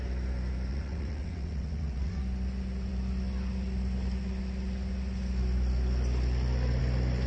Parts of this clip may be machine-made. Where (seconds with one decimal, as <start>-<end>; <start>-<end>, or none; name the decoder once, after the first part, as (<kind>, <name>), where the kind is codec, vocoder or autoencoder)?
0.7-2.2 (vocoder, WaveNeXt)